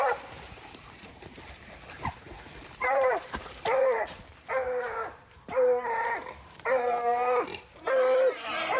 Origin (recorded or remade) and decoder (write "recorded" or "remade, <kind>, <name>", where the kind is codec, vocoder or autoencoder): remade, vocoder, BigVGAN v2